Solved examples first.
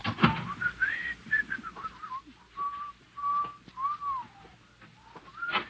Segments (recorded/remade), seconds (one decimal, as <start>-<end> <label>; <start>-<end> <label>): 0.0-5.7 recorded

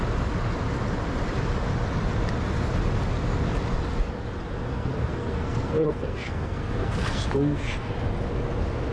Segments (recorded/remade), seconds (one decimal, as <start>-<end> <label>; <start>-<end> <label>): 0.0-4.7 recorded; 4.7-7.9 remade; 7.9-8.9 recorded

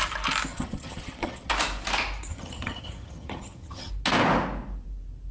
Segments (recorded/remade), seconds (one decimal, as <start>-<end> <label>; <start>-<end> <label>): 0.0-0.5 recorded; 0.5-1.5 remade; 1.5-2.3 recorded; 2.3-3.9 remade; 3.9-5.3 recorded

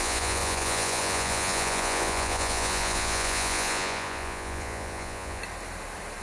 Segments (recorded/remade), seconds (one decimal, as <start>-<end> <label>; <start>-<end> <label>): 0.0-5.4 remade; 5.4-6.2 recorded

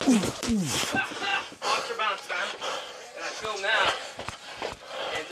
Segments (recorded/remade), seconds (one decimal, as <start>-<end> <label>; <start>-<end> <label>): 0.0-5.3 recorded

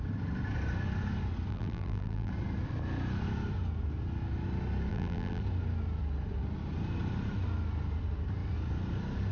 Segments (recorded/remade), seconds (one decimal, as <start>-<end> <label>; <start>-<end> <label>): 0.0-1.5 recorded; 1.5-2.3 remade; 2.3-4.9 recorded; 4.9-5.4 remade; 5.4-9.3 recorded